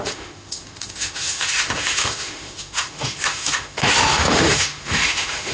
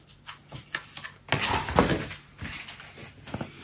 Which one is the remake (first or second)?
first